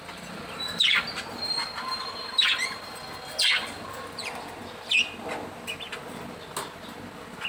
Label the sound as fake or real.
real